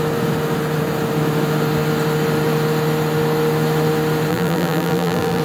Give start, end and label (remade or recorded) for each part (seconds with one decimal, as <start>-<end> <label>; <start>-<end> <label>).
0.0-4.3 recorded; 4.3-5.4 remade